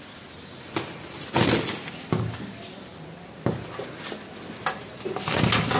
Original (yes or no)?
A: yes